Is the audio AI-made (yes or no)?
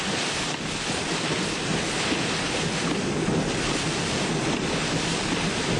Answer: no